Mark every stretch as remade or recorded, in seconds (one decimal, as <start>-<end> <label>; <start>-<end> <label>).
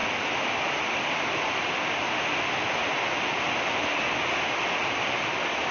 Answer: 0.0-5.7 recorded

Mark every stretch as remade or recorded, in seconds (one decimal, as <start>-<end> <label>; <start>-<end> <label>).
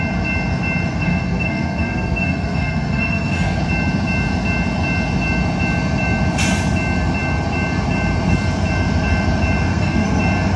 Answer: 0.0-0.9 recorded; 0.9-3.6 remade; 3.6-9.7 recorded; 9.7-10.2 remade; 10.2-10.6 recorded